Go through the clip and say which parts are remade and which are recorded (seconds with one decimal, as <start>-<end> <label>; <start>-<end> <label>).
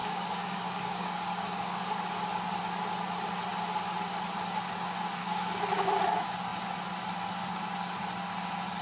0.0-1.9 remade; 1.9-5.2 recorded; 5.2-5.9 remade; 5.9-8.8 recorded